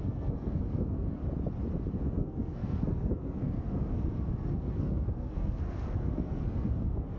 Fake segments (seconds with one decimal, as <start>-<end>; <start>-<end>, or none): 0.0-1.2; 1.9-7.2